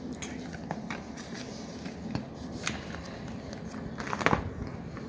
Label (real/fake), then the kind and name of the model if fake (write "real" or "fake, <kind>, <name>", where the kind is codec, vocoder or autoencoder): real